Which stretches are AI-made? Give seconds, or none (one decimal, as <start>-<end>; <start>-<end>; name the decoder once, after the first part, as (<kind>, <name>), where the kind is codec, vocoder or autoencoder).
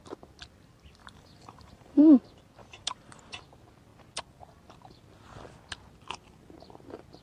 1.0-2.0 (vocoder, BigVGAN v2); 2.6-3.4